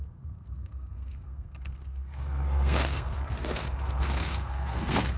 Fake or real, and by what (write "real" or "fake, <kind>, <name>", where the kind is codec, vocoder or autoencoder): fake, codec, SNAC